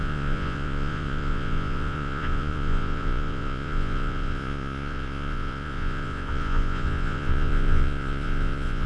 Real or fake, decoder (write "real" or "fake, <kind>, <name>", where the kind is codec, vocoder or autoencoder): fake, vocoder, Vocos